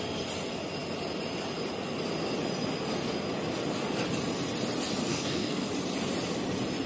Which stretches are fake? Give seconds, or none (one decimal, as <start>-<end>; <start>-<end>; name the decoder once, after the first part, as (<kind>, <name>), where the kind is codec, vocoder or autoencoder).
5.1-5.7 (codec, SNAC)